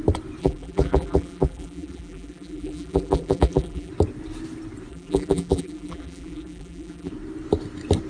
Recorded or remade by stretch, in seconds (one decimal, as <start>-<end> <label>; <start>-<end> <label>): 0.0-0.4 recorded; 0.4-3.9 remade; 3.9-4.9 recorded; 4.9-7.1 remade; 7.1-8.1 recorded